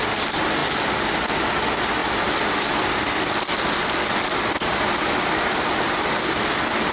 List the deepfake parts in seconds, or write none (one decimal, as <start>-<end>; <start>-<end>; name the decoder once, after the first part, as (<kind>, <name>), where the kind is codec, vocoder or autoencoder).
2.0-6.1 (vocoder, BigVGAN v2)